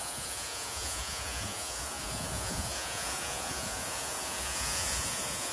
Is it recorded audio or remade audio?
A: remade